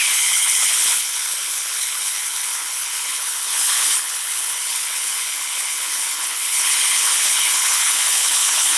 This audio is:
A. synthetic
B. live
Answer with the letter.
A